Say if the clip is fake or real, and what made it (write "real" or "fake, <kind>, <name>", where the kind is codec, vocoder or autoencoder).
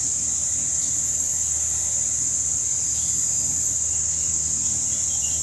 fake, vocoder, BigVGAN v2